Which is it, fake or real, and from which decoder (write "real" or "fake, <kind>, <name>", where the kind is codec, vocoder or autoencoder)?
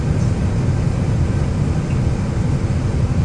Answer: real